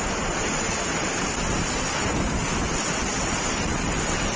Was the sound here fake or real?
real